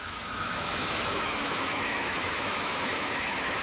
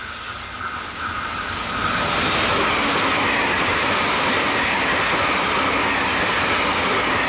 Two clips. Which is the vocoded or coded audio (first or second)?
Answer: first